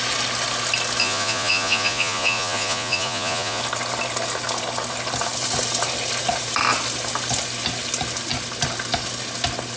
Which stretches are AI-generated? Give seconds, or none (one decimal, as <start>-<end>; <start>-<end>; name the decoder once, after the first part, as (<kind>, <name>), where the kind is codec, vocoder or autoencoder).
1.0-3.6 (vocoder, Vocos)